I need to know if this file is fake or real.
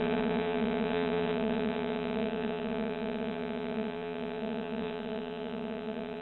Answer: fake